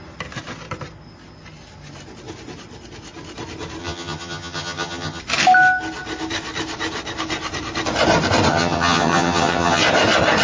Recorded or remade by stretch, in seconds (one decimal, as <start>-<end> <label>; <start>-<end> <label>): 0.0-3.8 recorded; 3.8-5.2 remade; 5.2-8.5 recorded; 8.5-9.8 remade; 9.8-10.4 recorded